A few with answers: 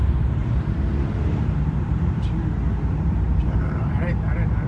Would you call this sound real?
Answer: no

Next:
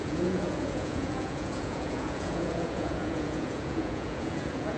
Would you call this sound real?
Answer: no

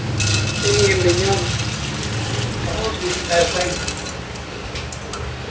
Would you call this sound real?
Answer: yes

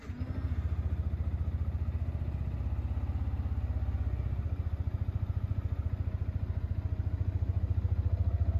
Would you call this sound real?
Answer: yes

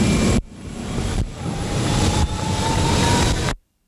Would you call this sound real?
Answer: no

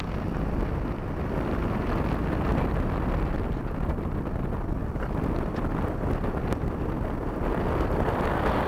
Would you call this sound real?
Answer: yes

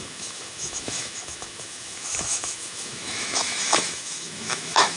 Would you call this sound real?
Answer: no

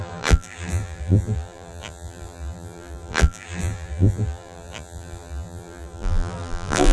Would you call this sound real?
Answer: no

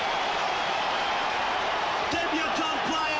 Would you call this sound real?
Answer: no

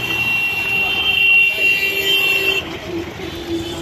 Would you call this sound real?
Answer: yes